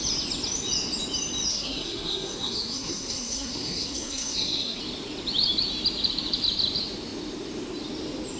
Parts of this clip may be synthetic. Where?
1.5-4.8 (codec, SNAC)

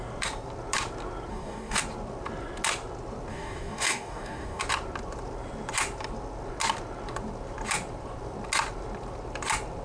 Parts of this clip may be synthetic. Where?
1.3-1.8 (codec, DAC); 3.3-4.6